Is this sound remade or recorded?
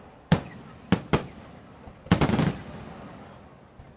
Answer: recorded